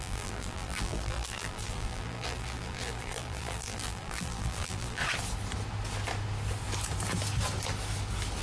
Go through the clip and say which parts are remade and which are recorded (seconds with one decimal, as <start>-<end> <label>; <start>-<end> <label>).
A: 0.0-5.0 remade; 5.0-8.4 recorded